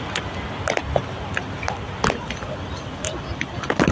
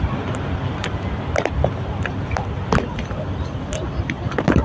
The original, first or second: first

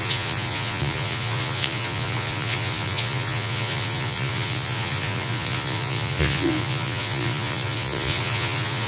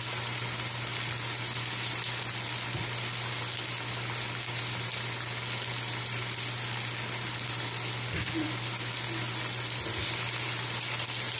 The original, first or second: second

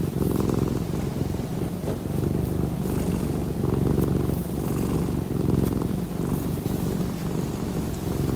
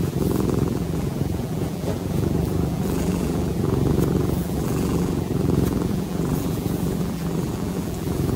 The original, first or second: first